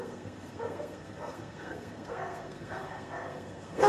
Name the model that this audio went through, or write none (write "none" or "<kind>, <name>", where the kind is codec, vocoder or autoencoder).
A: codec, SNAC